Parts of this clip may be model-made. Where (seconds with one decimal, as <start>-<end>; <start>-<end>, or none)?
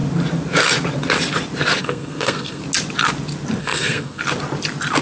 1.8-2.6; 3.6-4.2